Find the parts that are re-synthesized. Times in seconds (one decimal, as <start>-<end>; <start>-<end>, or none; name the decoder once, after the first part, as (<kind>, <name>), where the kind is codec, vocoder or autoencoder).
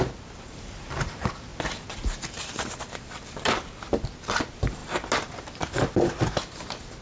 none